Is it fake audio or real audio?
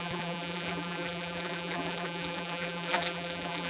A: fake